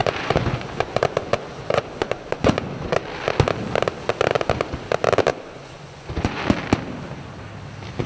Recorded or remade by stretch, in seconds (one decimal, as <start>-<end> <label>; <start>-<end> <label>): 0.0-3.0 remade; 3.0-5.3 recorded; 5.3-6.4 remade; 6.4-8.1 recorded